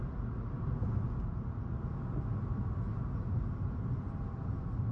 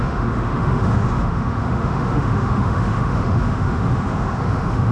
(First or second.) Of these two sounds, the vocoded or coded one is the second